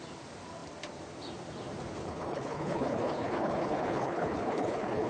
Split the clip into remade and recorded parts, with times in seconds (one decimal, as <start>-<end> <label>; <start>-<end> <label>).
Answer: 0.0-2.0 recorded; 2.0-5.1 remade